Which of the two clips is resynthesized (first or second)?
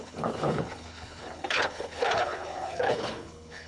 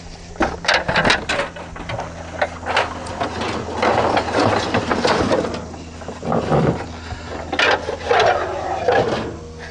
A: first